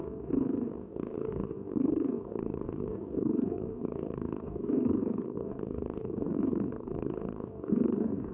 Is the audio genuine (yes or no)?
no